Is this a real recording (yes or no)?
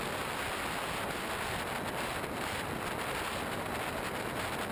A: yes